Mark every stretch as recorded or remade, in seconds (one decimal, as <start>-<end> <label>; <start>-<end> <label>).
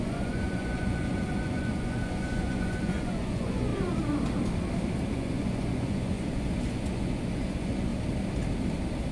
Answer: 0.0-3.7 remade; 3.7-5.1 recorded; 5.1-7.9 remade; 7.9-9.1 recorded